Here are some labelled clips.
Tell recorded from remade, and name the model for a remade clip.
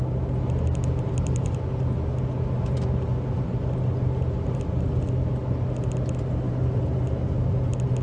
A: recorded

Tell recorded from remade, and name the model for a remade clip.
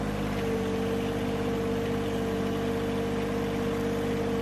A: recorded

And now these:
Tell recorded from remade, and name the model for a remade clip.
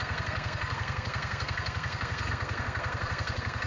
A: remade, codec, SNAC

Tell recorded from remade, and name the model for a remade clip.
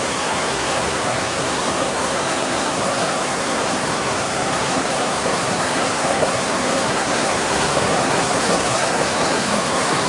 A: remade, codec, SNAC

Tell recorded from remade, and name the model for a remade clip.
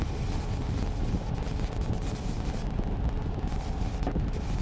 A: recorded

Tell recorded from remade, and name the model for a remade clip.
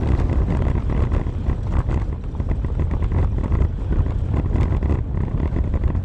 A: recorded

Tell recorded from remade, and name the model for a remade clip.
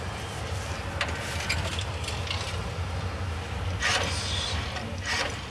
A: recorded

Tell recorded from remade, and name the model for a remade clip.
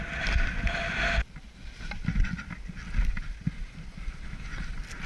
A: recorded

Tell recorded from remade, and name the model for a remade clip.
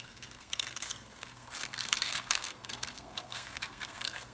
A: remade, codec, SNAC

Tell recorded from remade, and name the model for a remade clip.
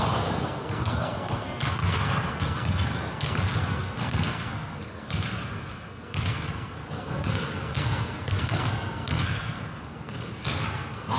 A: remade, codec, SNAC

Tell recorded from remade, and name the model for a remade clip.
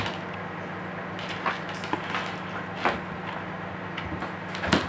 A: recorded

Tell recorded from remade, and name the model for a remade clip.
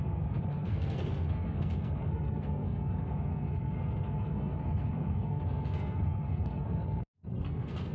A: remade, codec, SNAC